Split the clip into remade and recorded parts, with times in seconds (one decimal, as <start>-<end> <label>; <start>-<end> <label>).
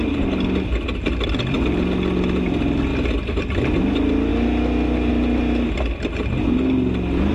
0.0-7.3 recorded